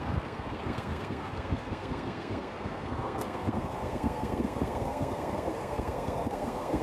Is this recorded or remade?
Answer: remade